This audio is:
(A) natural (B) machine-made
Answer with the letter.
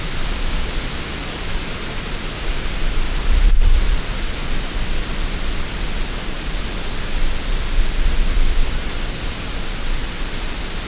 A